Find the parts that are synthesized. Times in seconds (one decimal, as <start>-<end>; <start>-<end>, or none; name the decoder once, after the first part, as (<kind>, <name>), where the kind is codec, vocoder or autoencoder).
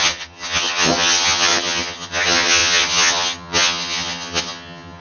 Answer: 0.0-5.0 (vocoder, HiFi-GAN)